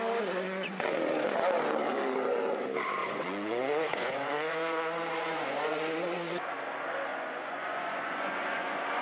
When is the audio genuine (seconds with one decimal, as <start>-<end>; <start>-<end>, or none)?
0.0-3.0; 6.5-7.1